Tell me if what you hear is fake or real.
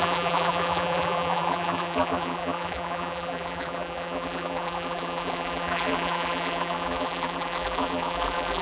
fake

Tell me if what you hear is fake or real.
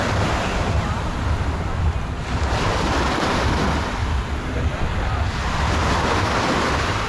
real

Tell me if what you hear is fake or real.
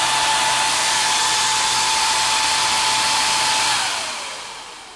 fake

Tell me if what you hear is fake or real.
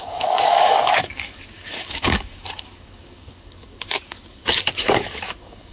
fake